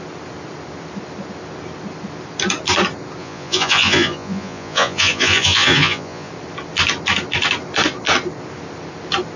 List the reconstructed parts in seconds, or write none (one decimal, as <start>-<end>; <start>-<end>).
3.2-6.3

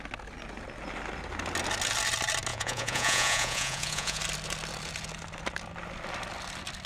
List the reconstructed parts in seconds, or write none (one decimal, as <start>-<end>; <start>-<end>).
2.5-4.2

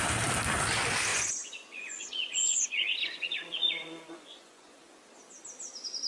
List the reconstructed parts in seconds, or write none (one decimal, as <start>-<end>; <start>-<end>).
1.1-4.8

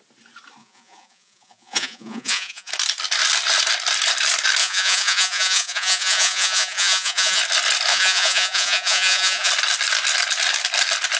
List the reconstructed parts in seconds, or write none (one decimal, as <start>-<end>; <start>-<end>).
0.6-2.7; 4.6-7.4; 7.9-9.5

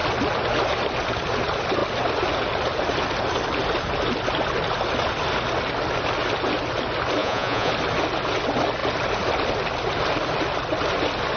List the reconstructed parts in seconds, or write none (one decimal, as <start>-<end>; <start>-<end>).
7.2-7.7

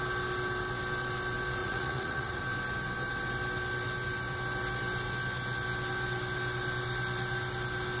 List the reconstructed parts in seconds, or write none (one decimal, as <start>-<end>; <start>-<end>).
1.6-2.4

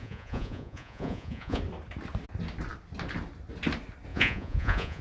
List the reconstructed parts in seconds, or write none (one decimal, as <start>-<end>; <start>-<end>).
0.0-1.6; 4.1-5.0